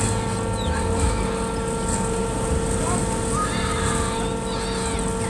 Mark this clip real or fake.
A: real